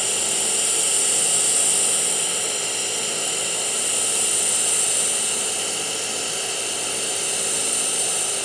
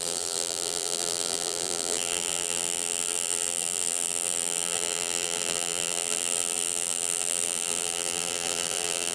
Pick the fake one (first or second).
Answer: second